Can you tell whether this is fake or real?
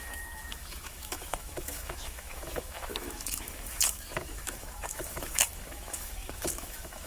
fake